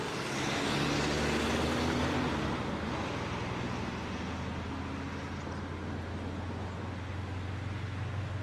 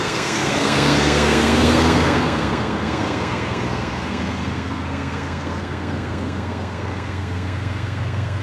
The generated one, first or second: second